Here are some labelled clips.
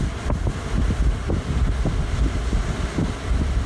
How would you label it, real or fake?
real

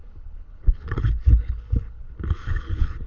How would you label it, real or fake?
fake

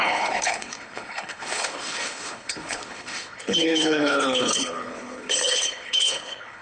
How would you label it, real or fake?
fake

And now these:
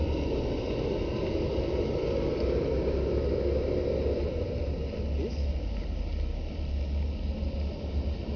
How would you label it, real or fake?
real